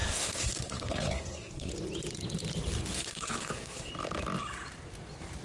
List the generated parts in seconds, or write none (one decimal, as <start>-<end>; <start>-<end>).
0.0-1.7; 2.9-3.9